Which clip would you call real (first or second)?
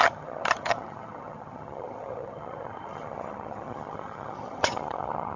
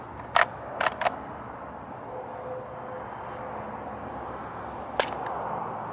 second